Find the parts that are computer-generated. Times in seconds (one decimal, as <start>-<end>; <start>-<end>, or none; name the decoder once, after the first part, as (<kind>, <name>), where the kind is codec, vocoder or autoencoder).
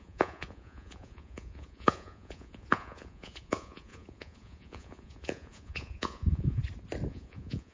0.0-6.6 (vocoder, Vocos); 7.1-7.7